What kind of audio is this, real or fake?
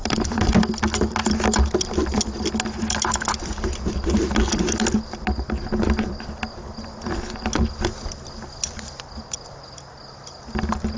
real